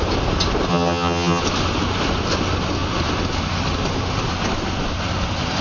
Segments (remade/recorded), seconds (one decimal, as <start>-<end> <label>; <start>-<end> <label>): 0.0-0.7 recorded; 0.7-1.4 remade; 1.4-5.6 recorded